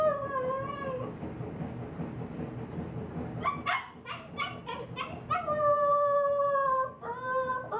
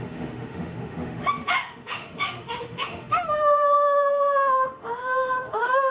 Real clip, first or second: first